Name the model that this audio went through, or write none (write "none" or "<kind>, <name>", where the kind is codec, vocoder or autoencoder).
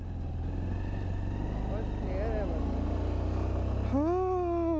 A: none